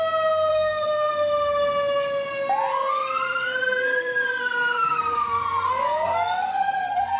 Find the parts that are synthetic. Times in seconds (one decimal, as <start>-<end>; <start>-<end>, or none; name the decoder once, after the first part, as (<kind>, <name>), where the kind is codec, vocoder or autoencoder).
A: 0.5-1.1 (codec, SNAC); 2.7-7.2